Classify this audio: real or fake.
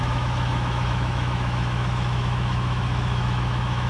fake